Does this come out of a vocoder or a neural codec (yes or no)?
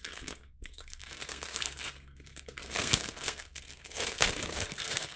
yes